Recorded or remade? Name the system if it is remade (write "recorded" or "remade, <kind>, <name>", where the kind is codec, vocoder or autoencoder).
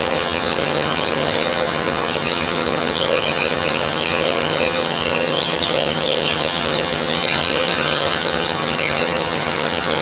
remade, vocoder, HiFi-GAN